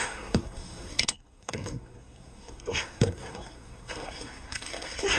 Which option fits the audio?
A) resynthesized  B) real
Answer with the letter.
A